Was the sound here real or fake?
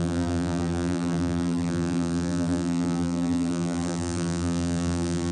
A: fake